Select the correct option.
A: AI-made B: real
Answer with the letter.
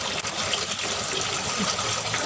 B